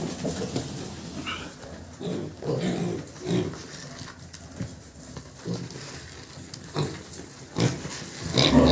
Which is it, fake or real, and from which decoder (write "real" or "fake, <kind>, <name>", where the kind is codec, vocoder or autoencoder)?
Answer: real